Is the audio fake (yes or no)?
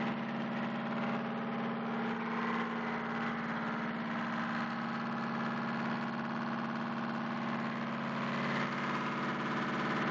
no